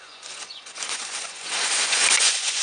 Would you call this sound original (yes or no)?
no